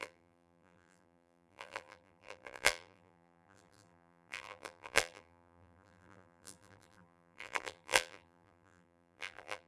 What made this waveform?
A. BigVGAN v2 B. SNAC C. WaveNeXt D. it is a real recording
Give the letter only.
A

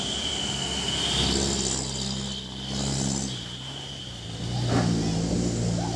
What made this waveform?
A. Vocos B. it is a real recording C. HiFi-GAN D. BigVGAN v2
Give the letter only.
B